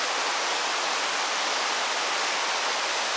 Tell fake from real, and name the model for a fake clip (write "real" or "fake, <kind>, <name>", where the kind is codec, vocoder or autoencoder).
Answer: real